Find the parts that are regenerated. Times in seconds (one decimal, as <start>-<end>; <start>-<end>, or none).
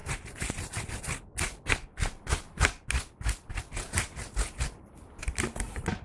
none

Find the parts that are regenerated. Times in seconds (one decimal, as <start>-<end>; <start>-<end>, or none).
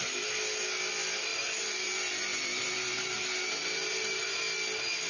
1.3-4.4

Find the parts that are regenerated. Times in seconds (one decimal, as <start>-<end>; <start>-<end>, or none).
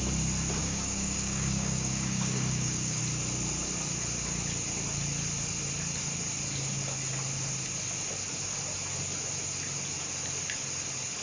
0.6-3.0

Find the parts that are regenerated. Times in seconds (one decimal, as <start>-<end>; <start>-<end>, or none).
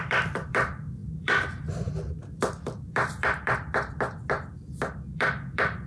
0.0-5.9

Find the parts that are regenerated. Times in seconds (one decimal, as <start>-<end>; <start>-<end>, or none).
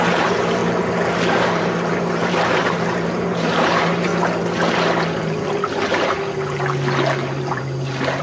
0.0-0.6; 1.3-4.1; 7.4-8.2